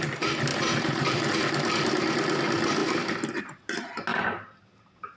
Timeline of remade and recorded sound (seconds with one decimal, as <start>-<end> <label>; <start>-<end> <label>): 0.0-0.5 recorded; 0.5-1.3 remade; 1.3-4.1 recorded; 4.1-5.2 remade